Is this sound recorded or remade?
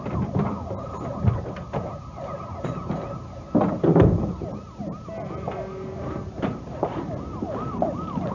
recorded